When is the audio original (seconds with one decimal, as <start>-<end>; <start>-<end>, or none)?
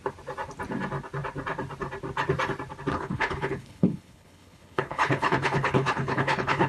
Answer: 0.0-2.9